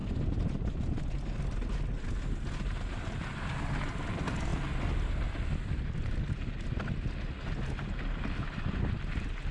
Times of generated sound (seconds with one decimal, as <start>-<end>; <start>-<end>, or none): none